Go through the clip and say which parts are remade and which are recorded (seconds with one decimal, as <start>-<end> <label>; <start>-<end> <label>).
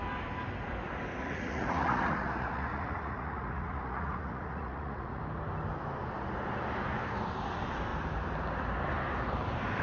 0.0-1.2 recorded; 1.2-5.2 remade; 5.2-9.8 recorded